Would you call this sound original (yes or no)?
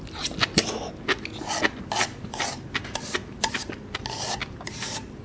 yes